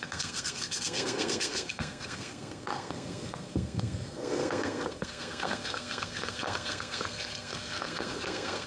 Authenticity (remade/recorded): remade